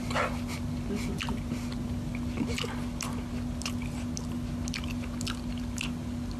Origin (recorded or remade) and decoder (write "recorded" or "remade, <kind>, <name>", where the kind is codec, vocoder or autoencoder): recorded